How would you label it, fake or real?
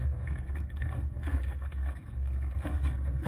fake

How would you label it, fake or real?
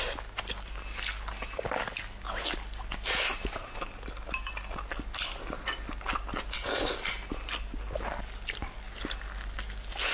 real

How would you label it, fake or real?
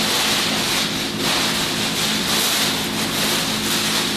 real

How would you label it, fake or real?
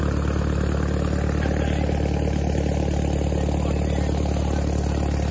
real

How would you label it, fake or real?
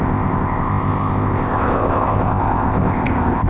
fake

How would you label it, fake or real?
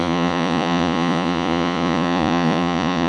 fake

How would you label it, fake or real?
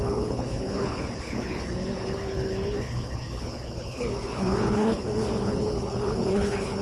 fake